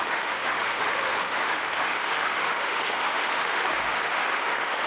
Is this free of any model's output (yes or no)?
no